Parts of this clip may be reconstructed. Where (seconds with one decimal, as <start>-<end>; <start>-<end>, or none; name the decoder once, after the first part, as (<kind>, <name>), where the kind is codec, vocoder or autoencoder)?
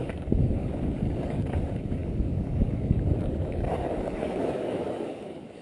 0.0-5.6 (codec, DAC)